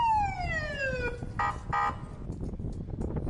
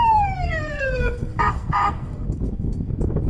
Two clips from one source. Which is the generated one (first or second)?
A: second